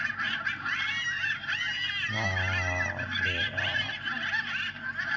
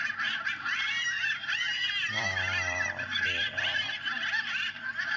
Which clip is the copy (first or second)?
second